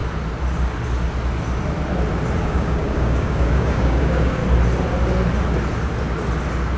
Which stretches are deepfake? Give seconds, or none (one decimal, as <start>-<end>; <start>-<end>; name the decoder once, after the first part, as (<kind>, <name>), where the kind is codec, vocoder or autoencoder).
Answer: 2.4-4.4 (codec, DAC)